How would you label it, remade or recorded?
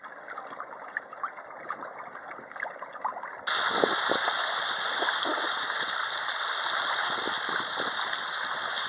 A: recorded